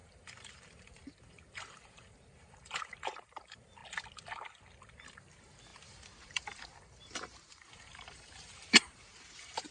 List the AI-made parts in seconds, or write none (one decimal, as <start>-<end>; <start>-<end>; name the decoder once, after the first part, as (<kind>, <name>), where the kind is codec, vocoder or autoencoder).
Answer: 0.0-3.8 (vocoder, BigVGAN v2); 4.8-9.7